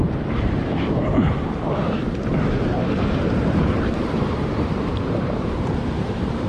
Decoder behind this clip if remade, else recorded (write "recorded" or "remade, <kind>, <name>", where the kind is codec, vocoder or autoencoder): remade, vocoder, BigVGAN v2